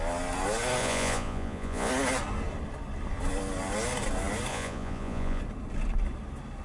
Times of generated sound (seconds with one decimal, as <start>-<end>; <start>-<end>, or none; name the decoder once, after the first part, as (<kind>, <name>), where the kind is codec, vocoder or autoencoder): 0.8-1.9 (vocoder, Vocos); 4.5-5.4